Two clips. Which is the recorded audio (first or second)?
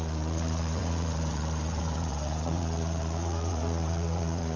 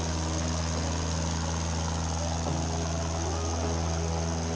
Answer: second